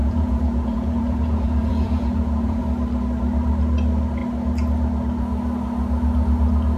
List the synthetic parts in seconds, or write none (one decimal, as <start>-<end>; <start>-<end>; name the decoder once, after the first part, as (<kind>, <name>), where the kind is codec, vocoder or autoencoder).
0.0-2.6 (vocoder, Vocos)